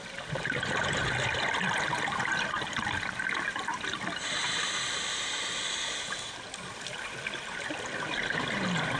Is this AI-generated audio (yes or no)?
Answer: no